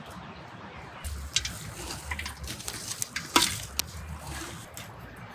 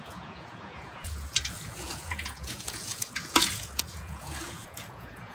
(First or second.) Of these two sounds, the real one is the first